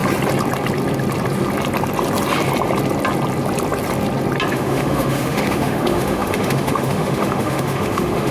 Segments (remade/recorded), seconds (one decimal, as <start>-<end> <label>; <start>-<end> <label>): 0.0-4.5 recorded; 4.5-8.3 remade